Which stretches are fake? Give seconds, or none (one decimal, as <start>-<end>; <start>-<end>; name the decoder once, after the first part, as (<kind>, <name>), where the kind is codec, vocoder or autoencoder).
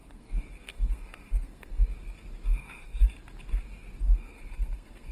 0.0-1.9 (codec, SNAC); 2.6-3.0; 4.0-5.1